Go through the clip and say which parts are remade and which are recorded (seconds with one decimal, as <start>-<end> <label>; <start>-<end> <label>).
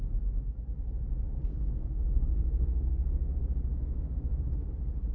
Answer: 0.0-1.5 recorded; 1.5-3.4 remade; 3.4-3.8 recorded; 3.8-4.4 remade; 4.4-5.1 recorded